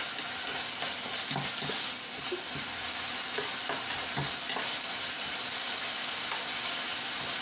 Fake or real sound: real